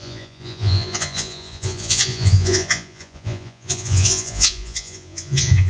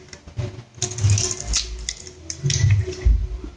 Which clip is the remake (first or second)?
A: first